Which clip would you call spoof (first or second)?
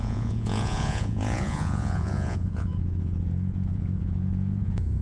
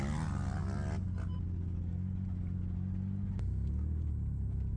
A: first